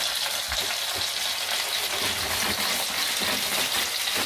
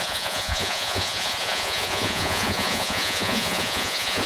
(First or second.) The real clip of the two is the first